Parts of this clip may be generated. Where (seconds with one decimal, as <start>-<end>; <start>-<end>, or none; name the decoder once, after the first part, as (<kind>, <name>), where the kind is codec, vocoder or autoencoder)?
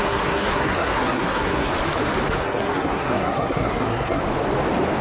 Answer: 0.0-1.7 (codec, SNAC); 2.4-4.2